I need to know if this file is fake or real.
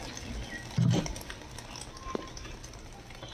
real